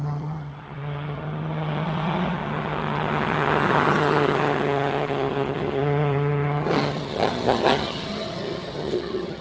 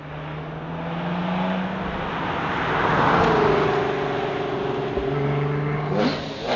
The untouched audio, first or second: second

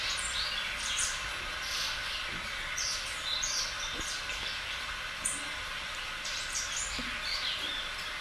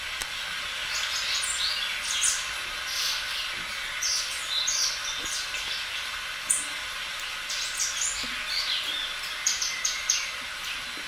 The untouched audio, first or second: second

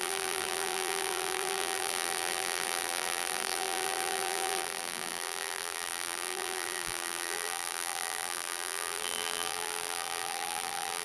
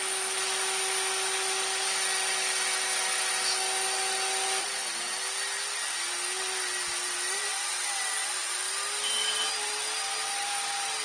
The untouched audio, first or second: second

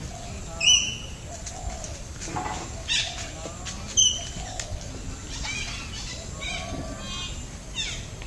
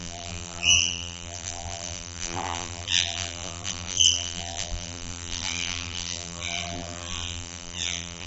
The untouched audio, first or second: first